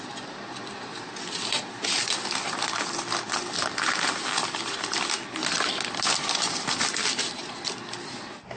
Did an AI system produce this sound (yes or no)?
no